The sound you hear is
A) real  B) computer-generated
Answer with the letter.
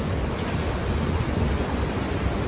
B